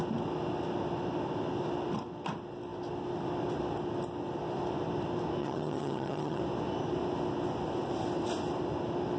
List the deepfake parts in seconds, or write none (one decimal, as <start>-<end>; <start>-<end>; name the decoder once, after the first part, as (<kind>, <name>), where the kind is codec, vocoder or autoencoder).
5.4-6.4 (vocoder, HiFi-GAN)